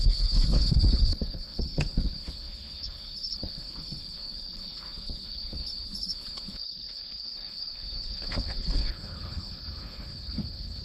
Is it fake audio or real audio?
fake